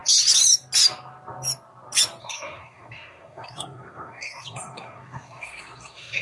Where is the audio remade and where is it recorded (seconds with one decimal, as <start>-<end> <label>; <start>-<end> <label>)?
0.0-2.2 recorded; 2.2-6.2 remade